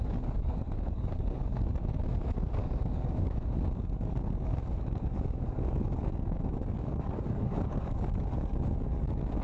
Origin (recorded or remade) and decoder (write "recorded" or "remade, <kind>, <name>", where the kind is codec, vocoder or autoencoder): remade, codec, DAC